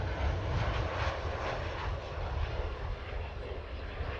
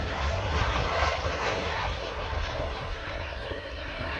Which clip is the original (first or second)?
first